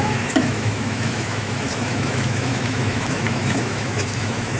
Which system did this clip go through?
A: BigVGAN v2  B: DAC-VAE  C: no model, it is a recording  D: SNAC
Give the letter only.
B